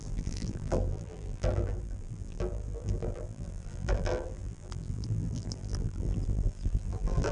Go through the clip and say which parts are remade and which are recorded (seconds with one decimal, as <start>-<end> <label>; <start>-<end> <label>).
0.0-7.3 remade